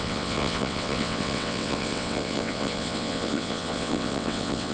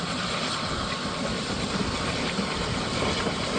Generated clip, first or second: first